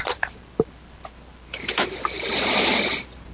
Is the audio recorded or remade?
recorded